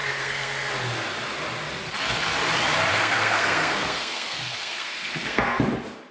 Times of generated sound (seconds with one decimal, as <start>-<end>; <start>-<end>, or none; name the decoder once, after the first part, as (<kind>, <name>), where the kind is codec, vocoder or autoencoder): 0.0-0.7 (codec, SNAC); 2.9-5.6